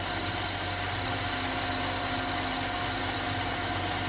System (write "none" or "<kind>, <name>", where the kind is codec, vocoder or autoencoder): none